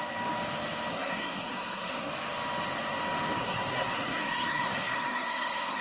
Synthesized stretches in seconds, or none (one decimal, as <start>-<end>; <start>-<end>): 0.9-2.1; 3.4-5.8